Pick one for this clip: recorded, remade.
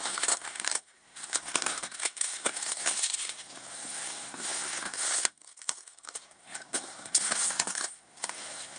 remade